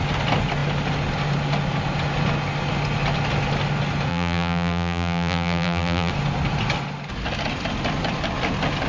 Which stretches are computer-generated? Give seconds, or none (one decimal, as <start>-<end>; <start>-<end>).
4.1-6.1